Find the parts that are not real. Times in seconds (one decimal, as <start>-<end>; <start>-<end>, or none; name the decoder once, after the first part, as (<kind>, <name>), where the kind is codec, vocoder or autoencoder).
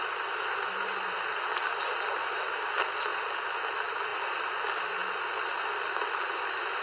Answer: none